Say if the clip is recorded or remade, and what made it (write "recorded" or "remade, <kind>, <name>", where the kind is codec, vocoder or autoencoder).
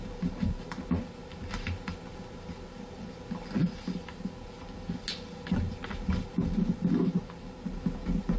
recorded